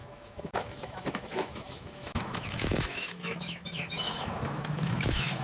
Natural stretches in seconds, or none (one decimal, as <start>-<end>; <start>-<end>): none